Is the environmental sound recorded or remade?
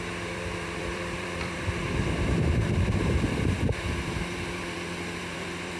remade